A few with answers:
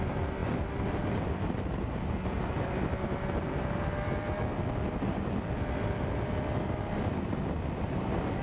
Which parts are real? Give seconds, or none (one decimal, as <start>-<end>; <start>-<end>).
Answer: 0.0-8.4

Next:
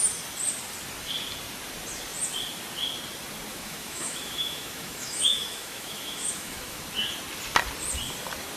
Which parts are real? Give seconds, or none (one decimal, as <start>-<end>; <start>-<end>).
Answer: 0.0-3.5; 6.8-8.6

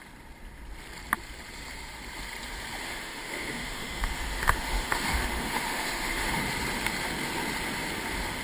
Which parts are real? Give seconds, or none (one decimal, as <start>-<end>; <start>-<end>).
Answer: 0.0-2.8; 6.4-8.4

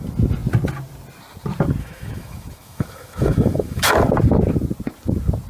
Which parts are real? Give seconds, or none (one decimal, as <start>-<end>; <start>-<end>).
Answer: 0.0-1.8; 3.9-5.5

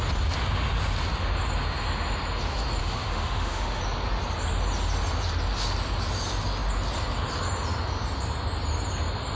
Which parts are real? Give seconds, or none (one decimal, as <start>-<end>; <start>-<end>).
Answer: 0.0-2.8; 3.8-9.4

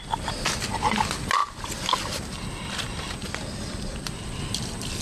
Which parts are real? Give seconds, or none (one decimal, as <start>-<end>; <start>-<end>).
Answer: 0.0-5.0